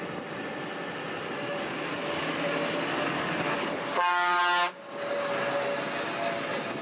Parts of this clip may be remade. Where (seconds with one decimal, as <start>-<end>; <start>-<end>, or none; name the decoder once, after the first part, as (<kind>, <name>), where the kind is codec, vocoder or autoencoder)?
1.5-2.3 (codec, DAC); 2.9-4.4